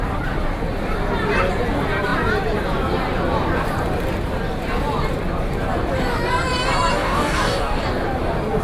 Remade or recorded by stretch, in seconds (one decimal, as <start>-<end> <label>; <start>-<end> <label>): 0.0-6.9 recorded; 6.9-7.8 remade; 7.8-8.6 recorded